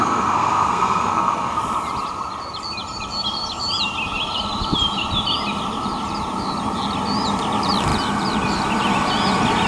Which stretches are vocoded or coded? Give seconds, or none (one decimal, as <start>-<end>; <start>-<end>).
0.0-1.6